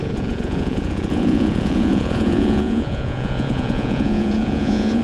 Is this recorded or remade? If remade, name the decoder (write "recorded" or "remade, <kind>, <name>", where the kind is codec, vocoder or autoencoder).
remade, vocoder, Vocos